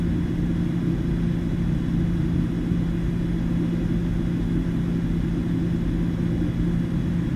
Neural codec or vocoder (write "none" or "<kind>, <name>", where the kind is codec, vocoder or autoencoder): none